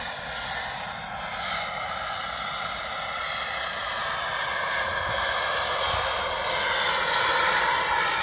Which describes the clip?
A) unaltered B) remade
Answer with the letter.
A